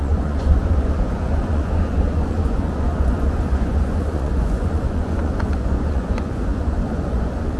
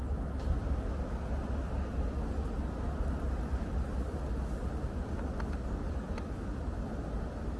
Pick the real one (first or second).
second